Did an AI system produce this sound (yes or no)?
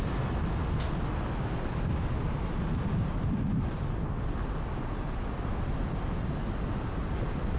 no